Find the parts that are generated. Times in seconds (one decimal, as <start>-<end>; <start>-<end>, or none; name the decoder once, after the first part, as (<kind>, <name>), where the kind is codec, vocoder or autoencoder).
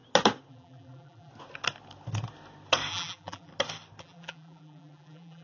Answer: 0.5-1.3 (vocoder, BigVGAN v2); 2.9-3.5; 4.0-5.4